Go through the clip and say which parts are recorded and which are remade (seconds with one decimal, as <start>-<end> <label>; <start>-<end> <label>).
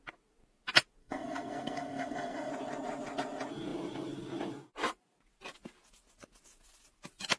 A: 0.0-1.0 recorded; 1.0-2.5 remade; 2.5-7.4 recorded